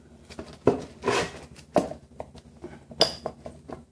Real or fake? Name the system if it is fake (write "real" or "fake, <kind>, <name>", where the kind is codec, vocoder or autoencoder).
real